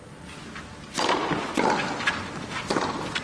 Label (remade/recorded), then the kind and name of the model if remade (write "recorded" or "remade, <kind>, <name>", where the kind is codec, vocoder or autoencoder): recorded